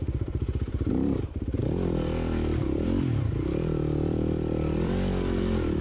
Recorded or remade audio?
remade